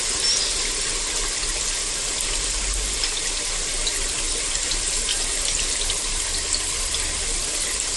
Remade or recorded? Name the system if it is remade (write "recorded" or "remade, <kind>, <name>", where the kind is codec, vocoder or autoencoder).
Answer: recorded